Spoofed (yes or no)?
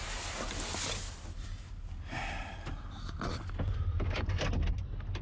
no